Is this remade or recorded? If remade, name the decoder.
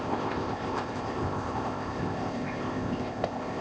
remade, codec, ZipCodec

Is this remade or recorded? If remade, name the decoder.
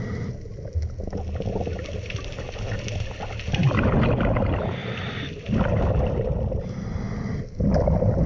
recorded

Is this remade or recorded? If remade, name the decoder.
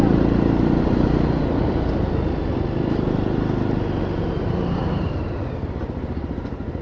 recorded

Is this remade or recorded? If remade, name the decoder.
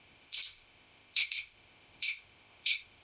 remade, codec, ZipCodec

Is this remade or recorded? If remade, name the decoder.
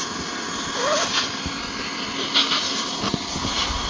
recorded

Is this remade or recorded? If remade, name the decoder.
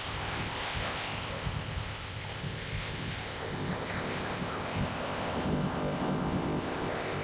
remade, codec, ZipCodec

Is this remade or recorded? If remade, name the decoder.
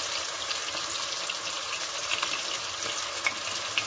recorded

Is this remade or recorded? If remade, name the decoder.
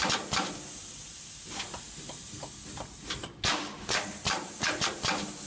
recorded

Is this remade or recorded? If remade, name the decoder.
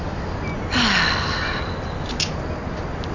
recorded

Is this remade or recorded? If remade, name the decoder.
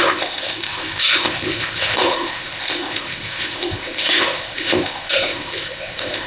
remade, codec, ZipCodec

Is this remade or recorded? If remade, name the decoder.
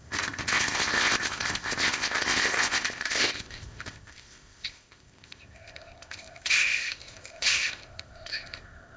remade, codec, ZipCodec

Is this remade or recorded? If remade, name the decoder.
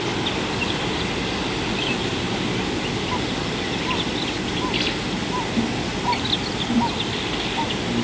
recorded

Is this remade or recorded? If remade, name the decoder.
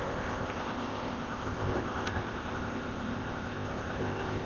remade, codec, ZipCodec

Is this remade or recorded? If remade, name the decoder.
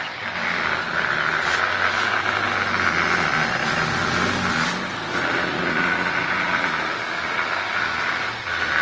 recorded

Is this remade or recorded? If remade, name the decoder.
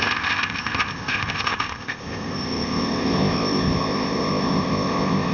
remade, codec, ZipCodec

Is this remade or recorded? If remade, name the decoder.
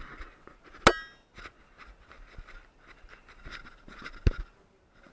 recorded